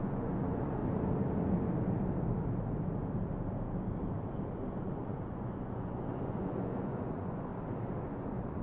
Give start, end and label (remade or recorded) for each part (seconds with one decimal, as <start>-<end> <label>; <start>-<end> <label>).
0.0-0.8 remade; 0.8-4.8 recorded; 4.8-7.5 remade; 7.5-8.0 recorded; 8.0-8.6 remade